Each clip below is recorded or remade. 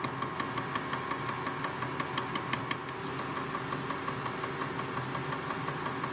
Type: recorded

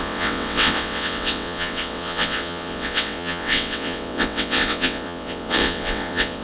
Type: remade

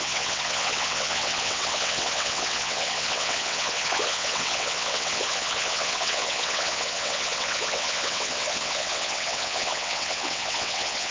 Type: remade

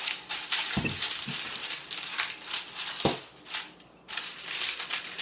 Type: recorded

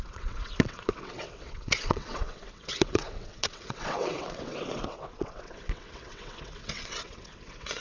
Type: remade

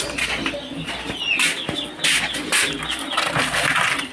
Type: recorded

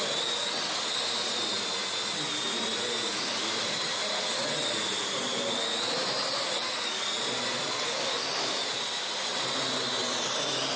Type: recorded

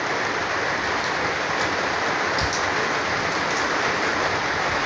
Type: recorded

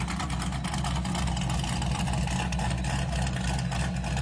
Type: recorded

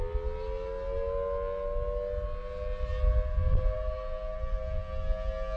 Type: recorded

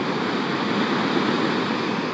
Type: recorded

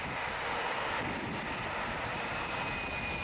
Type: recorded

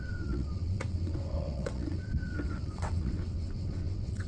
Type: remade